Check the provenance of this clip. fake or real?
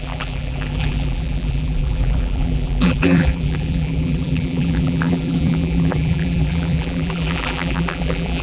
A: fake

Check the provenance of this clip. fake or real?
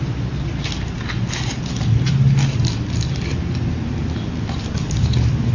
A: real